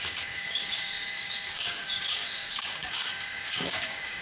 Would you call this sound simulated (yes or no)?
yes